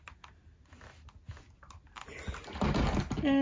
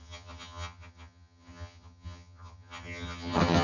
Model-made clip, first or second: second